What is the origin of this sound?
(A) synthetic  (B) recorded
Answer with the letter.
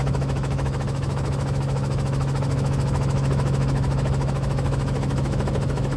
A